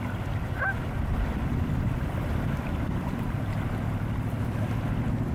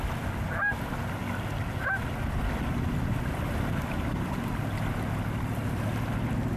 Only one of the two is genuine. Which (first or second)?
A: second